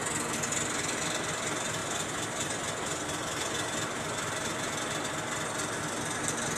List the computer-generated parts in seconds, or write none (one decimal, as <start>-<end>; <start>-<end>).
none

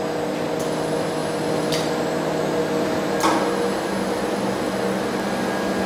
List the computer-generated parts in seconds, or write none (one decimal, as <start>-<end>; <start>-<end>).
none

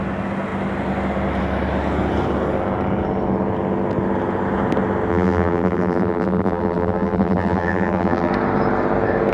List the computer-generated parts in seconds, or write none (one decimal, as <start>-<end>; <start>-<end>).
5.1-8.3

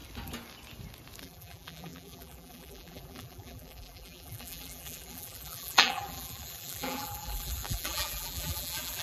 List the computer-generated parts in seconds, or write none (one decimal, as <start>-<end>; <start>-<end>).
1.2-9.0

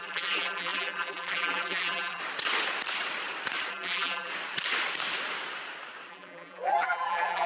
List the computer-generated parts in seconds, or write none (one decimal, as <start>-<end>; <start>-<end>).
0.0-2.2; 3.7-4.3; 6.1-7.5

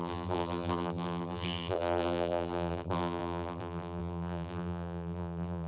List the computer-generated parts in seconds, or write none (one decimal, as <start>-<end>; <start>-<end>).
0.0-5.7

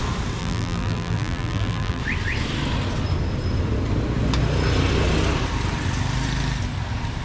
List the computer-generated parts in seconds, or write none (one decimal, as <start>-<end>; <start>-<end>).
0.4-2.0

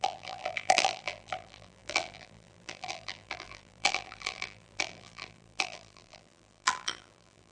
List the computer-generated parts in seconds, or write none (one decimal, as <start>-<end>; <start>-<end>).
0.0-7.5